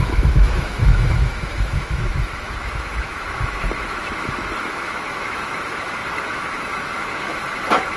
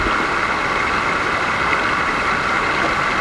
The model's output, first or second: first